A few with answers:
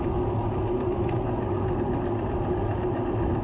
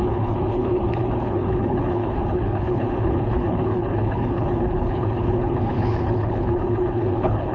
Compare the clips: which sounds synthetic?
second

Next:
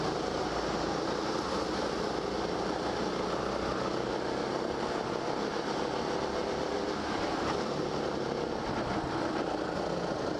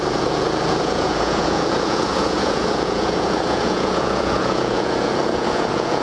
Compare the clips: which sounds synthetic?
second